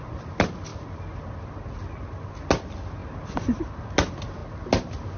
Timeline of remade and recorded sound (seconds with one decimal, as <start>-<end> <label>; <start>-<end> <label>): 0.0-5.2 recorded